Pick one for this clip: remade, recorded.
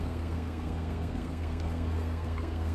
remade